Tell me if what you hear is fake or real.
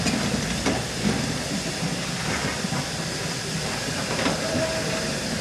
real